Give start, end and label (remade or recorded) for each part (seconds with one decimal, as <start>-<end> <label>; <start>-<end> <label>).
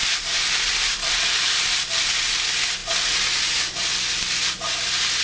0.0-5.2 recorded